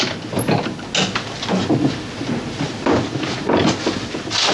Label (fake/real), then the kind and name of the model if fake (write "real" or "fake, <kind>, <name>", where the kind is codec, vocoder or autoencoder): real